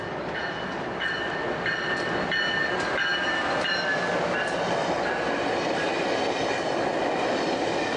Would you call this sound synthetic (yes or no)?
no